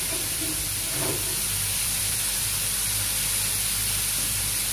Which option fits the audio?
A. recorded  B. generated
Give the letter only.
A